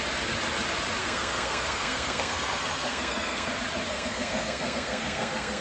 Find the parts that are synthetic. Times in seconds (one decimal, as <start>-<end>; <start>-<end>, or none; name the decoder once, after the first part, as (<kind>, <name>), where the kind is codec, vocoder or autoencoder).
1.0-3.5 (codec, SNAC); 3.9-5.6